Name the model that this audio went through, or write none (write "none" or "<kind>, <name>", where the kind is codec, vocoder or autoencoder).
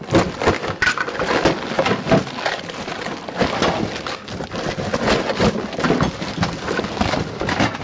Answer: none